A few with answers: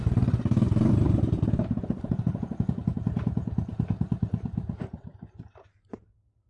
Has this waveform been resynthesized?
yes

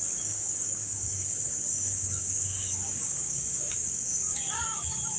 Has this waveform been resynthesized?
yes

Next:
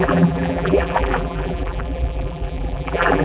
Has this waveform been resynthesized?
yes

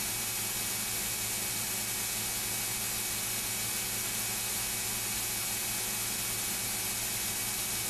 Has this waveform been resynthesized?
no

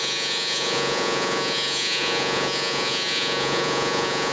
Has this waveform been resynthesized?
yes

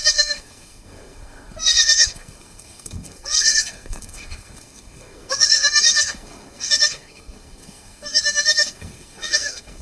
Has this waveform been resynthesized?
yes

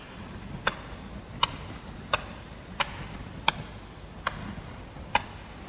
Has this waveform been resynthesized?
no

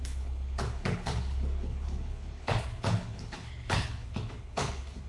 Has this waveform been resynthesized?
yes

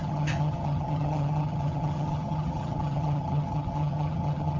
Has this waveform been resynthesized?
yes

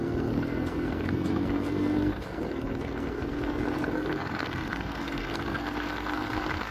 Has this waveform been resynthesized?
yes